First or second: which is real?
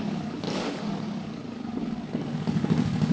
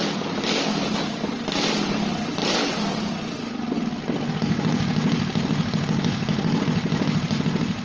second